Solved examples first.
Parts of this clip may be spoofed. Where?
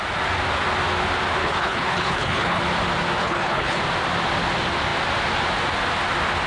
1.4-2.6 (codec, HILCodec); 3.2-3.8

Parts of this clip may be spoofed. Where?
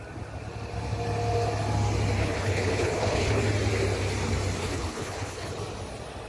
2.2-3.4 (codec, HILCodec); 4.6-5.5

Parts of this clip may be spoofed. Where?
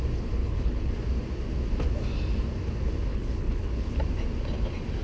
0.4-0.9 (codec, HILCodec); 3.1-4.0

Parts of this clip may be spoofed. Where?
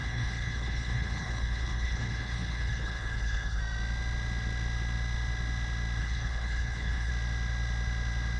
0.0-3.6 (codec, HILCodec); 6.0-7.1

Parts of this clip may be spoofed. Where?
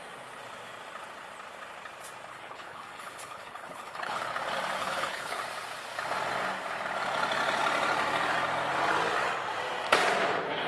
2.3-4.3 (codec, HILCodec); 4.8-5.4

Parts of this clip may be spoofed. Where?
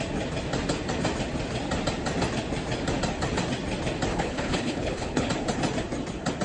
4.1-5.3 (codec, HILCodec)